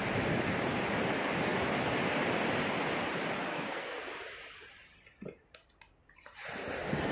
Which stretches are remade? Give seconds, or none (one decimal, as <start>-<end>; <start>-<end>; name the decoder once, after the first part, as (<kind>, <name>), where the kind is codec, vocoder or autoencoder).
3.5-4.0 (codec, SNAC)